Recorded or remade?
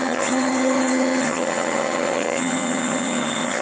remade